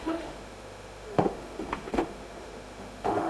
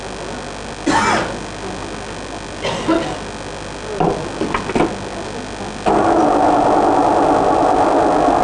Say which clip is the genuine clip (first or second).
second